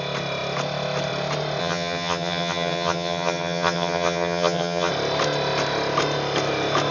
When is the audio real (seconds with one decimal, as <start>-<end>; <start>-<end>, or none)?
0.0-1.6; 4.9-6.9